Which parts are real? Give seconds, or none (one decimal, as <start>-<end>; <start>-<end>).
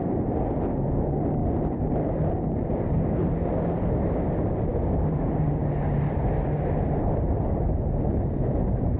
0.0-4.7; 5.3-9.0